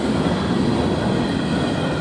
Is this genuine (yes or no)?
yes